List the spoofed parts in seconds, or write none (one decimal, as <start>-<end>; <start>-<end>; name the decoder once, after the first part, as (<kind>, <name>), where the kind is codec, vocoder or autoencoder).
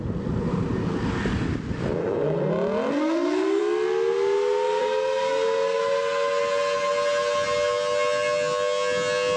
2.0-2.5 (codec, SNAC); 2.9-3.6; 4.8-5.8